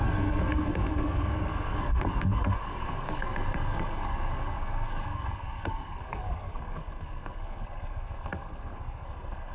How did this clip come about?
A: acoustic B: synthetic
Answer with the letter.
B